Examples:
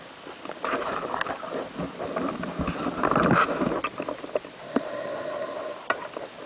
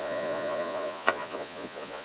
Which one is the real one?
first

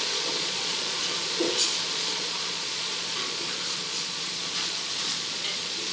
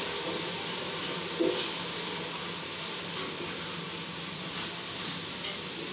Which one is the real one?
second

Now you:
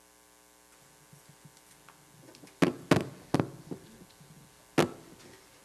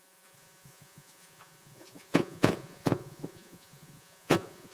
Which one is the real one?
first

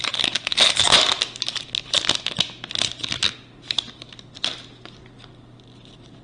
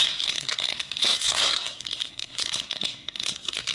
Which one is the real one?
first